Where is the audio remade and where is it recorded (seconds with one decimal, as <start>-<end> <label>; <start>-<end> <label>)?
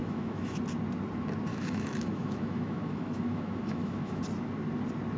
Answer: 0.0-0.6 remade; 0.6-1.5 recorded; 1.5-4.2 remade; 4.2-5.2 recorded